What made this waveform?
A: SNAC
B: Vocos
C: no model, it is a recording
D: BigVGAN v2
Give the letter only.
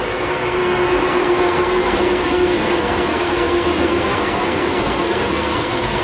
A